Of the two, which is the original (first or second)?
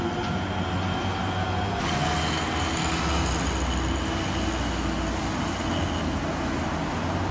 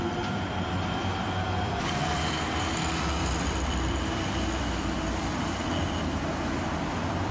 first